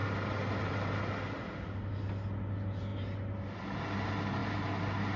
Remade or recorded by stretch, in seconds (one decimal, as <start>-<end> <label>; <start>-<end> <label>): 0.0-5.2 recorded